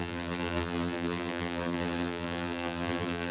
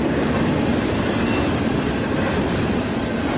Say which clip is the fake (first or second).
first